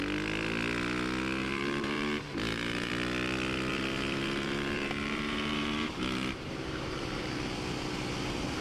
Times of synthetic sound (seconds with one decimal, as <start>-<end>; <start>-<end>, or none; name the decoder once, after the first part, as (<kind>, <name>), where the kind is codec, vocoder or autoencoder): 1.4-2.9 (vocoder, BigVGAN v2); 3.7-7.2